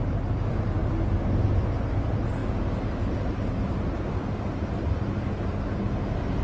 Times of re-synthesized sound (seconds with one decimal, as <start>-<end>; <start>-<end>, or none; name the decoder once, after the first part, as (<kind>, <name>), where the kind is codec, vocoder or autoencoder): none